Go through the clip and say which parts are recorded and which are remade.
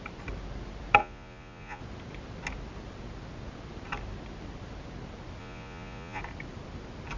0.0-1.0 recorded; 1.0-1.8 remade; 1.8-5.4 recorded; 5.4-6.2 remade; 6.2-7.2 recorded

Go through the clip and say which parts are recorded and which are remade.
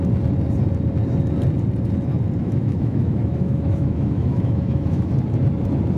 0.0-2.4 recorded; 2.4-5.1 remade; 5.1-6.0 recorded